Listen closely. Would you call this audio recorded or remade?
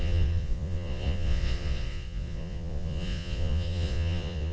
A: remade